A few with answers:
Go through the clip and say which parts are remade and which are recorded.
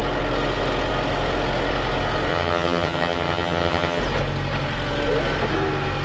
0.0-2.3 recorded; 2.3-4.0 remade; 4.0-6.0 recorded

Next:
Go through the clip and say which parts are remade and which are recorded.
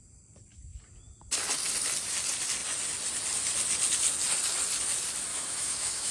0.0-5.3 recorded; 5.3-6.1 remade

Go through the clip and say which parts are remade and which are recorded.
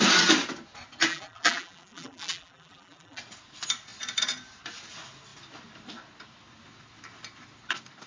0.0-1.1 recorded; 1.1-3.2 remade; 3.2-8.1 recorded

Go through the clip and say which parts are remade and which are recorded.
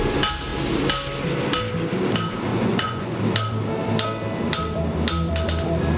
0.0-2.5 recorded; 2.5-3.2 remade; 3.2-6.0 recorded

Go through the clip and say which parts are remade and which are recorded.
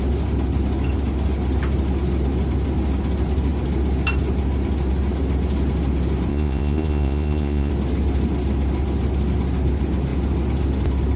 0.0-6.3 recorded; 6.3-7.7 remade; 7.7-11.2 recorded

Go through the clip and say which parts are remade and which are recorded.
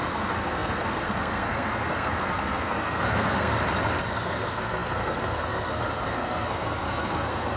0.0-3.5 remade; 3.5-4.0 recorded; 4.0-7.6 remade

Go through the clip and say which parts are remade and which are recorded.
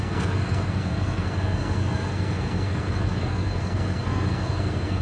0.0-5.0 remade